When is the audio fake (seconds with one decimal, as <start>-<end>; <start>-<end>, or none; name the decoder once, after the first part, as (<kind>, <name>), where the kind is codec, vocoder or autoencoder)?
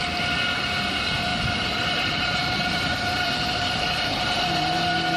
1.3-4.4 (vocoder, BigVGAN v2)